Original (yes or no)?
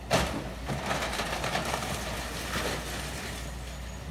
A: yes